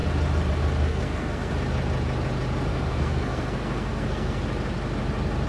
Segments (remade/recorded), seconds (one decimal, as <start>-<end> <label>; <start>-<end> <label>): 0.0-0.9 recorded; 0.9-1.5 remade; 1.5-2.7 recorded; 2.7-4.4 remade; 4.4-5.5 recorded